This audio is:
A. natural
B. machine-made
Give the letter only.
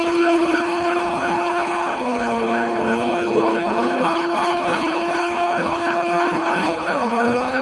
B